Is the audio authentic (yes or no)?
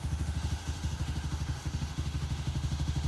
no